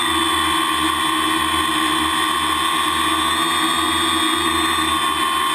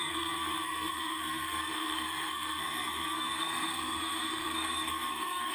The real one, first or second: first